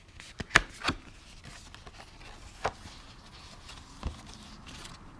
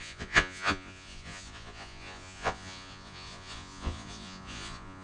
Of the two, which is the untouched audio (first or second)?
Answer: first